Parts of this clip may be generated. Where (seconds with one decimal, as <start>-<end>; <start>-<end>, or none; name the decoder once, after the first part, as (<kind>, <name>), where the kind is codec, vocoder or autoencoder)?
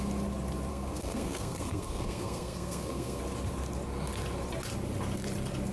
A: 0.7-3.2 (codec, SNAC)